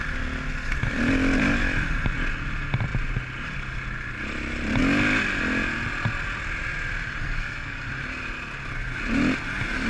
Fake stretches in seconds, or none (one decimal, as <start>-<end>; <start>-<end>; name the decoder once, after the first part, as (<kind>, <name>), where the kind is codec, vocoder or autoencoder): 7.2-7.9 (codec, SNAC)